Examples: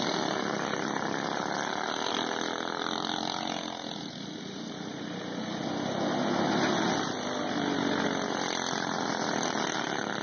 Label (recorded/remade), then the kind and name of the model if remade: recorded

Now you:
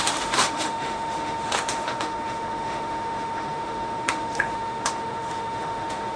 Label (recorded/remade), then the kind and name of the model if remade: remade, autoencoder, DAC-VAE